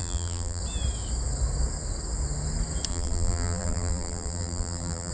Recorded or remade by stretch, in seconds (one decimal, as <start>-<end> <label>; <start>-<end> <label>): 0.0-0.6 remade; 0.6-2.9 recorded; 2.9-5.1 remade